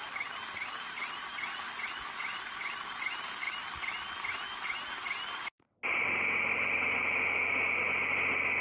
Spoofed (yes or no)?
no